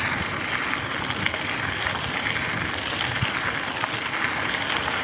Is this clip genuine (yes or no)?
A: yes